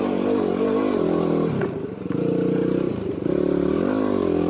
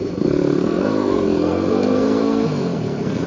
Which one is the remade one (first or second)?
second